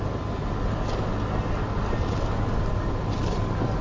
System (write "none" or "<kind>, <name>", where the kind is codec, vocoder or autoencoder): none